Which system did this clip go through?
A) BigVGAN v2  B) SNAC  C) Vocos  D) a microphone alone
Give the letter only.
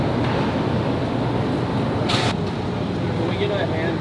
D